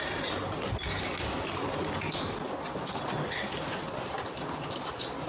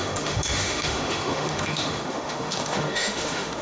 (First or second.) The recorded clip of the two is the first